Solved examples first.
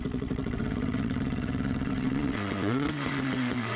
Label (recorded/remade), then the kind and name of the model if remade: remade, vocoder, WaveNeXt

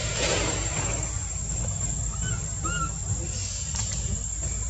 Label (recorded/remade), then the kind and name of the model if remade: recorded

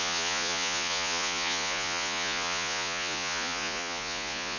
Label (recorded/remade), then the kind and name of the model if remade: remade, vocoder, Vocos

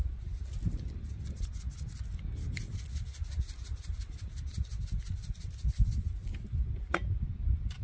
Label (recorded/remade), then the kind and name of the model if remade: recorded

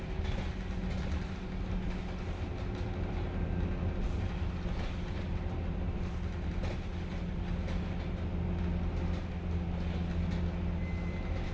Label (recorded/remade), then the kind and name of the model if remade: recorded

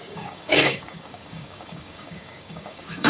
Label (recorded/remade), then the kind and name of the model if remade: remade, codec, DAC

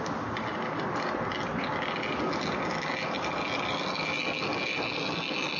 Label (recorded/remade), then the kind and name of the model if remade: recorded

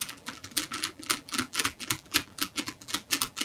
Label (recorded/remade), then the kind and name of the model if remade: remade, vocoder, BigVGAN v2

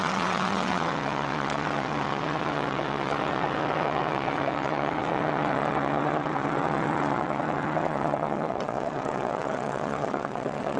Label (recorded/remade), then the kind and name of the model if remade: remade, vocoder, WaveNeXt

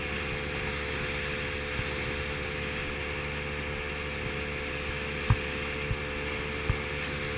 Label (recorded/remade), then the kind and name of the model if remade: recorded